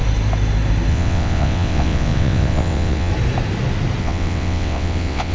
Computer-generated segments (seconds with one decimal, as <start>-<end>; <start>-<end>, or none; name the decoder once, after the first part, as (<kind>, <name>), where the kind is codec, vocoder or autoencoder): 0.9-3.1 (vocoder, WaveNeXt); 4.0-5.3